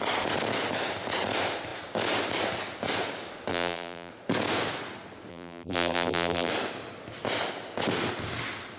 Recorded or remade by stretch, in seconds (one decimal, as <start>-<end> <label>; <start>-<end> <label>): 0.0-3.5 recorded; 3.5-4.1 remade; 4.1-5.3 recorded; 5.3-6.5 remade; 6.5-8.8 recorded